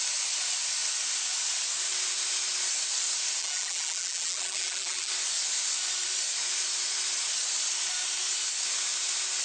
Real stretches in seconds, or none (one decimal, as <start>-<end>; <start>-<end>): 0.0-3.4; 5.1-9.4